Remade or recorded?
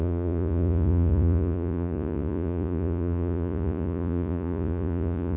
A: remade